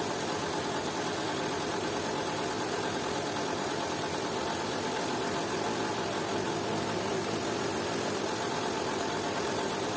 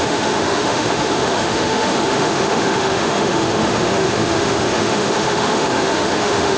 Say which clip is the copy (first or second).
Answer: second